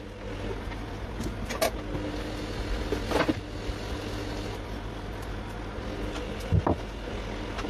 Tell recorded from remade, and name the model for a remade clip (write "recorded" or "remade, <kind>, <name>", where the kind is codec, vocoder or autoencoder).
recorded